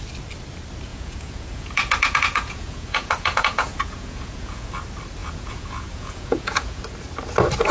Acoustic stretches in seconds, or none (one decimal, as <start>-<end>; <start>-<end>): 0.0-0.9; 4.7-5.2; 6.8-7.7